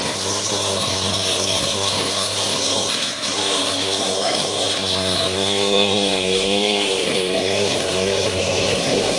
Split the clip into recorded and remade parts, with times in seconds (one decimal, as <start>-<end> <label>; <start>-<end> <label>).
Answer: 0.0-9.2 remade